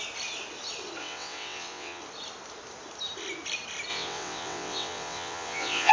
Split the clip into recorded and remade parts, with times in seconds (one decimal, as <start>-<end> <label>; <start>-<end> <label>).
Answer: 0.0-1.0 recorded; 1.0-2.0 remade; 2.0-3.9 recorded; 3.9-5.9 remade